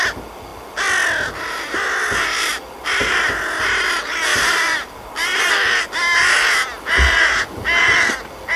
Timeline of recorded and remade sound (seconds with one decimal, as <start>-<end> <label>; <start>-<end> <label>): 0.0-4.3 recorded; 4.3-5.4 remade; 5.4-8.6 recorded